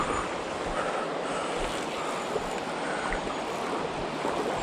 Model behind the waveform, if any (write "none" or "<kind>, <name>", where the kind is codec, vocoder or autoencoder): none